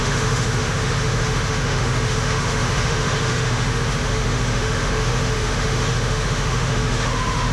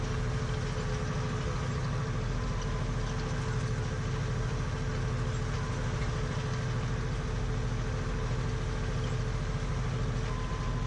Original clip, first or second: second